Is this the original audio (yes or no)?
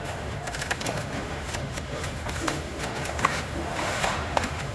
no